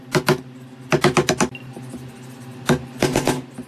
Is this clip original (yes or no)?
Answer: yes